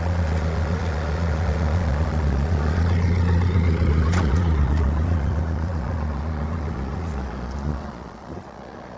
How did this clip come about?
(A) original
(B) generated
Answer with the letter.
B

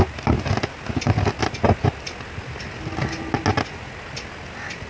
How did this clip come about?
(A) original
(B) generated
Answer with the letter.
A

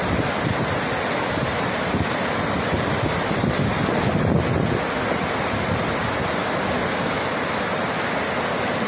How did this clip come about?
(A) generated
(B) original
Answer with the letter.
B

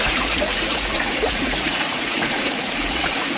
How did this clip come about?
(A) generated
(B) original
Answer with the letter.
A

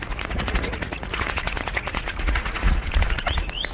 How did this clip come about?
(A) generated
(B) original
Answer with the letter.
A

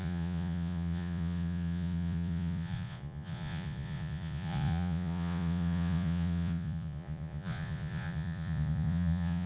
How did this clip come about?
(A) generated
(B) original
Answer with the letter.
A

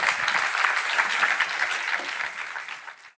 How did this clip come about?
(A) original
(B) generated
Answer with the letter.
A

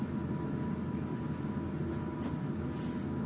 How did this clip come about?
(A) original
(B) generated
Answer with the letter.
A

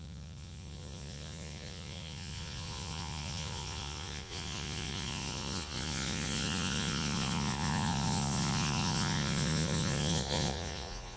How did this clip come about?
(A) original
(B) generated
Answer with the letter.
B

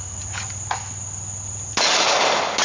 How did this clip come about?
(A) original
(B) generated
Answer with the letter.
A